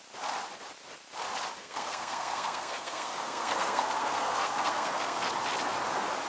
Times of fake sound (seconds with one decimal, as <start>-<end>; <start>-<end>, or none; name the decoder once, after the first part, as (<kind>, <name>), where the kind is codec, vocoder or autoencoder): 1.6-5.3 (codec, SNAC)